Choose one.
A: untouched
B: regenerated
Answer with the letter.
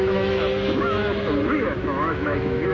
B